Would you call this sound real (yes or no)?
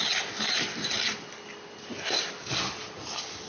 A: yes